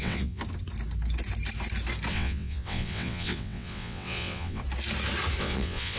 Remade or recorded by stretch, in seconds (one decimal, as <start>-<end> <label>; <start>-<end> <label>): 0.0-0.4 remade; 0.4-2.1 recorded; 2.1-4.6 remade; 4.6-5.4 recorded; 5.4-6.0 remade